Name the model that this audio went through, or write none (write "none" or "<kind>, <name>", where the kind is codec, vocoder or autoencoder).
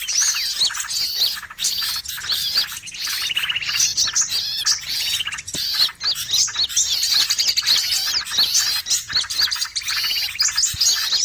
none